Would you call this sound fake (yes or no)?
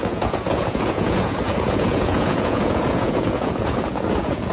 yes